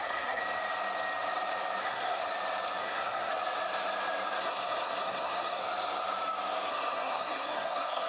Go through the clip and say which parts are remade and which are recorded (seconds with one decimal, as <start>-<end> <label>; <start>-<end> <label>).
0.0-0.4 remade; 0.4-1.8 recorded; 1.8-2.2 remade; 2.2-2.8 recorded; 2.8-3.3 remade; 3.3-4.4 recorded; 4.4-5.6 remade; 5.6-6.7 recorded; 6.7-8.1 remade